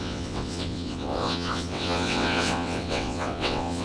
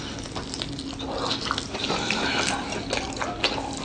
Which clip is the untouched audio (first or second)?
second